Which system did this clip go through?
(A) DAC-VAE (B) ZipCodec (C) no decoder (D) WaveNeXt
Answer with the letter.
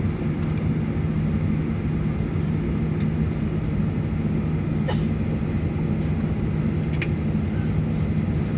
C